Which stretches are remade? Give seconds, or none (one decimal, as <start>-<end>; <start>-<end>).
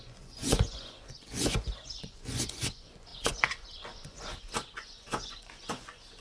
0.0-6.2